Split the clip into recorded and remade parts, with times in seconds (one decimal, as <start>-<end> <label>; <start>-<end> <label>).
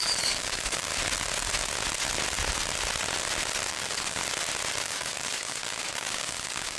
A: 0.0-0.9 remade; 0.9-3.7 recorded; 3.7-4.2 remade; 4.2-4.8 recorded; 4.8-6.8 remade